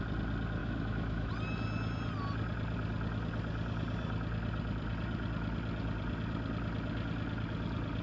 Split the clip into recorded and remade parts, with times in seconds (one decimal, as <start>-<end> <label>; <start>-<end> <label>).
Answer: 0.0-0.6 recorded; 0.6-1.3 remade; 1.3-8.0 recorded

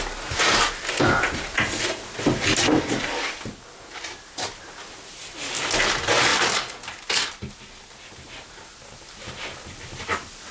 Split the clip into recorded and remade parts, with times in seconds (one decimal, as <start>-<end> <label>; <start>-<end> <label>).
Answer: 0.0-10.5 recorded

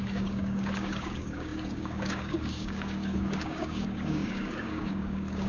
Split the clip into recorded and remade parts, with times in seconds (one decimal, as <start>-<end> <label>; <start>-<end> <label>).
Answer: 0.0-5.5 remade

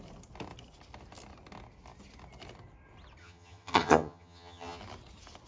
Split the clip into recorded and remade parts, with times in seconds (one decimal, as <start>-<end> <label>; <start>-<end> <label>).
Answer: 0.0-3.2 recorded; 3.2-4.8 remade; 4.8-5.5 recorded

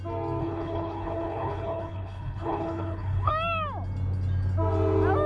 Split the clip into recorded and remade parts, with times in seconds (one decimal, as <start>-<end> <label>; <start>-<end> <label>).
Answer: 0.0-0.4 recorded; 0.4-3.3 remade; 3.3-5.3 recorded

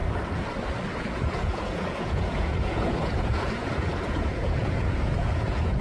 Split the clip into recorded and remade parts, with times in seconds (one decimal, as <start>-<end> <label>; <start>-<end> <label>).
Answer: 0.0-1.0 recorded; 1.0-5.8 remade

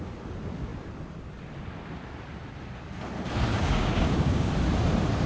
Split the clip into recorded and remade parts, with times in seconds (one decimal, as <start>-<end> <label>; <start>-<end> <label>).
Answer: 0.0-3.5 recorded; 3.5-4.5 remade; 4.5-5.3 recorded